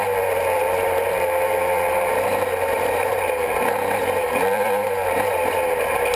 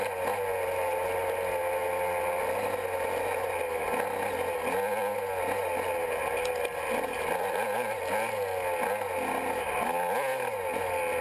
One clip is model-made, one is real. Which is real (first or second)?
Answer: second